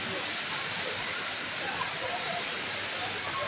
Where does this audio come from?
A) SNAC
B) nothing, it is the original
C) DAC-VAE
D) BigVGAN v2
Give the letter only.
B